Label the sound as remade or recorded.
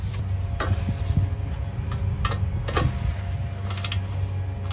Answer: recorded